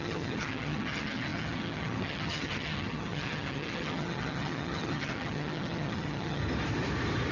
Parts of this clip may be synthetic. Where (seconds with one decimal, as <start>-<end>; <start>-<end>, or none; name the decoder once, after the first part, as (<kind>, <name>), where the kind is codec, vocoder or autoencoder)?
0.0-6.4 (vocoder, HiFi-GAN)